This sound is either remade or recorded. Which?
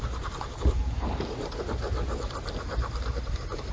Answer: recorded